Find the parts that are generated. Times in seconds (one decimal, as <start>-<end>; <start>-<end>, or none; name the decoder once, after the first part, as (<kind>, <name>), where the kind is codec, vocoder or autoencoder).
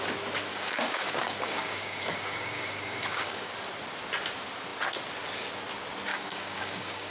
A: 0.5-3.5 (codec, DAC); 6.1-7.1